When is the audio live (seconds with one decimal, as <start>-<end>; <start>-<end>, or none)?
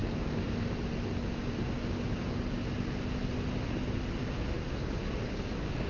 0.7-1.4; 2.4-5.0